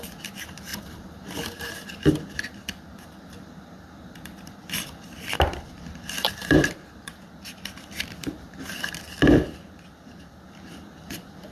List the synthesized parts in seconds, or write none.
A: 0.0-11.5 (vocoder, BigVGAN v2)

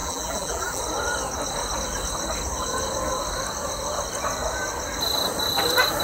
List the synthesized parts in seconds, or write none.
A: 0.0-0.8 (vocoder, BigVGAN v2)

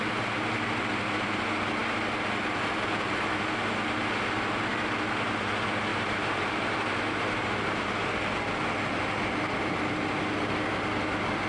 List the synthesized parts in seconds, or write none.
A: 5.9-6.6 (vocoder, BigVGAN v2)

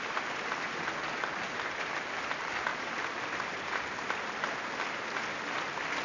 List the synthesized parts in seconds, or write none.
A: 2.7-4.4 (vocoder, BigVGAN v2)

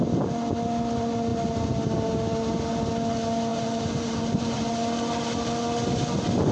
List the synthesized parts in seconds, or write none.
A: 3.5-4.7 (vocoder, BigVGAN v2)

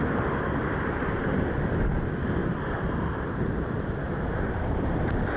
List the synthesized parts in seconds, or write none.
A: 0.6-1.3 (vocoder, BigVGAN v2); 2.4-5.4

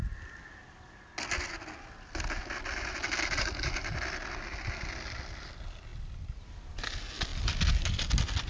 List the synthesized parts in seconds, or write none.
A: 7.3-8.5 (vocoder, BigVGAN v2)